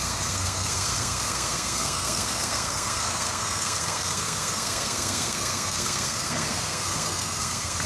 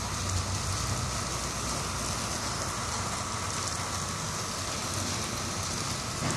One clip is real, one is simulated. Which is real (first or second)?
second